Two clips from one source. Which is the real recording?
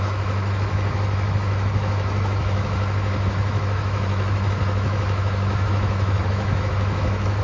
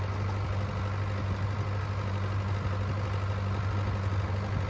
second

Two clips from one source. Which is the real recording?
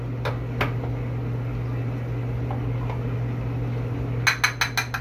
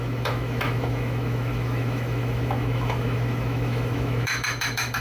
first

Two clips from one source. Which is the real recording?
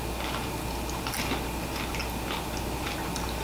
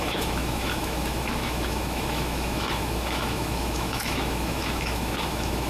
first